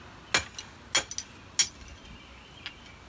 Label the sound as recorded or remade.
recorded